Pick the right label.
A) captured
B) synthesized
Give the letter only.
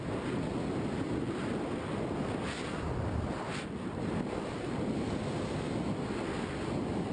A